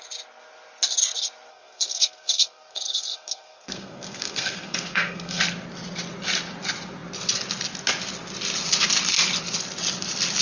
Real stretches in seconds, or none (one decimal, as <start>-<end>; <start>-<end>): 0.0-1.5; 5.4-10.4